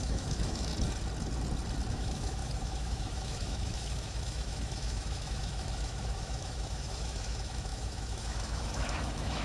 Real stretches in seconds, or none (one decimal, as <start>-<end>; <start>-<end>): 0.7-1.9